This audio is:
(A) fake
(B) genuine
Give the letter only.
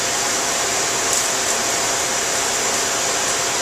B